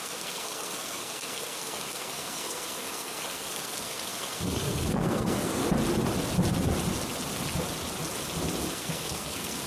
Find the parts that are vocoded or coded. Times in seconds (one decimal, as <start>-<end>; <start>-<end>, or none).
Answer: 0.0-5.6; 8.7-9.7

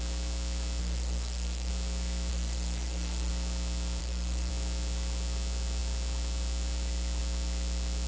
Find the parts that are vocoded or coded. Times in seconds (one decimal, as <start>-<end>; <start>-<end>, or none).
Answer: 0.8-1.7; 2.3-3.3; 4.0-4.5

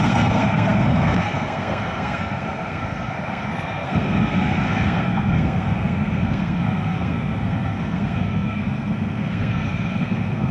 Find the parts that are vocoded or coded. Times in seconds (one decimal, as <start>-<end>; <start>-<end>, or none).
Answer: 0.0-10.5

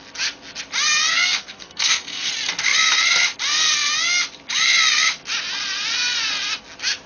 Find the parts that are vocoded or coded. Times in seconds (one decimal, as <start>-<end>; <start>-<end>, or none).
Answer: 1.1-2.3